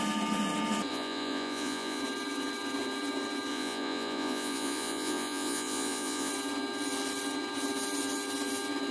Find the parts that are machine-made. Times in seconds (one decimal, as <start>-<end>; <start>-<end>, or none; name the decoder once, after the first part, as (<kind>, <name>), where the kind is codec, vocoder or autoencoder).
0.9-2.0 (vocoder, Vocos); 3.5-6.3

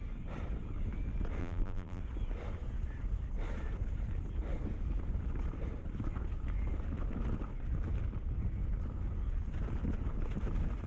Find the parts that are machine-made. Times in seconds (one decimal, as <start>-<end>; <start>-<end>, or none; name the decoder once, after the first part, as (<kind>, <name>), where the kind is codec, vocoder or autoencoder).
1.4-2.0 (vocoder, BigVGAN v2)

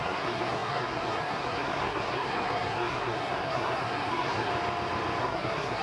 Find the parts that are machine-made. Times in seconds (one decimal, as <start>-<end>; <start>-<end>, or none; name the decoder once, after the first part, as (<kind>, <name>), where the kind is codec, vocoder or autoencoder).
0.0-4.5 (codec, SNAC); 5.2-5.8

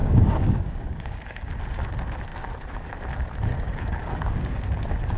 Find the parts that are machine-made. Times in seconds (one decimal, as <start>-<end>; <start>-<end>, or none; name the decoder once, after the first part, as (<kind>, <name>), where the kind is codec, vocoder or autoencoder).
0.0-1.5 (codec, DAC); 3.5-4.7

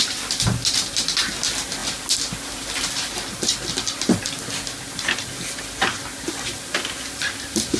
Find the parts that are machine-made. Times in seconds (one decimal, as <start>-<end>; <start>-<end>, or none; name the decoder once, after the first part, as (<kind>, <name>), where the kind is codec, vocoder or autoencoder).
none